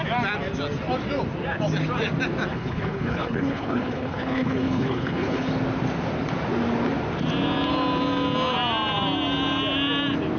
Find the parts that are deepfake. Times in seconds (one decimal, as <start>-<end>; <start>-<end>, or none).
2.5-5.5